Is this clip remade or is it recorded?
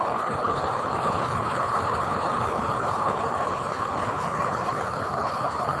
remade